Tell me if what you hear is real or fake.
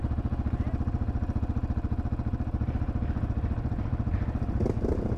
real